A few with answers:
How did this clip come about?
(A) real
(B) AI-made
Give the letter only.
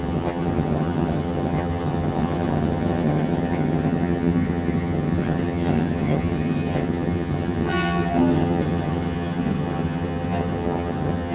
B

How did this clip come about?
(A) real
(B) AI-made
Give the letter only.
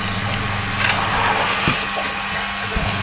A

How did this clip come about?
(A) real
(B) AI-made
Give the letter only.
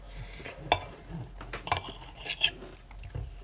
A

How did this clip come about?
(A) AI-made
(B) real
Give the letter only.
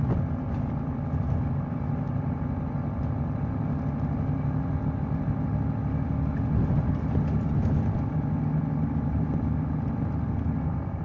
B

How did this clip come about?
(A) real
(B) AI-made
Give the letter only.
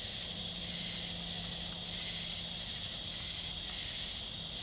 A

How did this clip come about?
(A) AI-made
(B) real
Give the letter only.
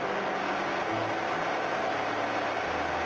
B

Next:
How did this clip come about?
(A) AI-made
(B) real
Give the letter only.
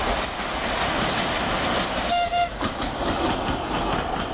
B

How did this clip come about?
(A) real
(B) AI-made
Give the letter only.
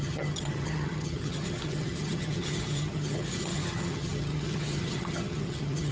B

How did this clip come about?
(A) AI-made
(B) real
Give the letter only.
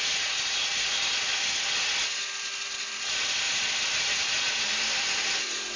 B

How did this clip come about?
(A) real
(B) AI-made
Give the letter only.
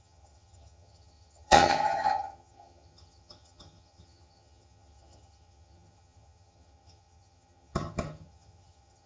B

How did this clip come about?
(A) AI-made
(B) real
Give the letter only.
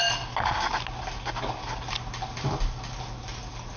B